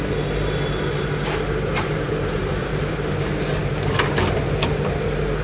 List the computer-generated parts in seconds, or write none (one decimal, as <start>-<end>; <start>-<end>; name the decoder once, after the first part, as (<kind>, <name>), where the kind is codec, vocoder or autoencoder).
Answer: 1.7-3.0 (vocoder, BigVGAN v2)